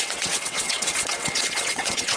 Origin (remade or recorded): remade